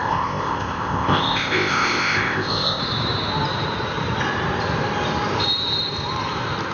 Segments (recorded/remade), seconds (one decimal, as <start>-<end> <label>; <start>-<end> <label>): 0.0-2.8 remade; 2.8-6.7 recorded